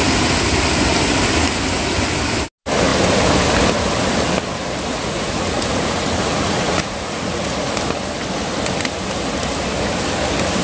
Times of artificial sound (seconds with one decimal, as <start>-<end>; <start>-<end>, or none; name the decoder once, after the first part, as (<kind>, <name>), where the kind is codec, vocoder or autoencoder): 4.9-7.6 (vocoder, Vocos)